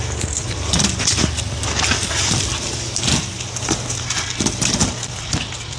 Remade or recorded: recorded